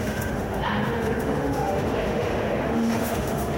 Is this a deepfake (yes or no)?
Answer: yes